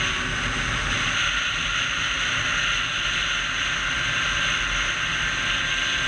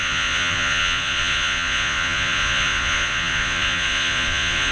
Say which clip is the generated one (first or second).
second